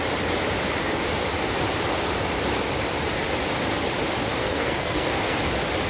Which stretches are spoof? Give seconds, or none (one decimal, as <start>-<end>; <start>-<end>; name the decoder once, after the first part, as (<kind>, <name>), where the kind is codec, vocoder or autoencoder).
4.4-5.4 (codec, SNAC)